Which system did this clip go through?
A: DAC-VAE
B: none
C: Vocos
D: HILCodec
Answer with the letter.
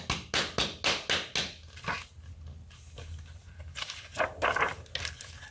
B